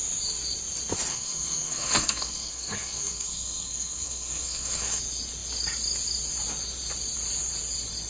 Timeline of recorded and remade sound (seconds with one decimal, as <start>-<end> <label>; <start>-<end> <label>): 0.0-1.1 recorded; 1.1-5.0 remade; 5.0-8.1 recorded